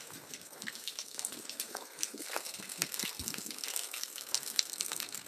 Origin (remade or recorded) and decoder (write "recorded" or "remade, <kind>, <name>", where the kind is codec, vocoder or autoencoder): remade, codec, SNAC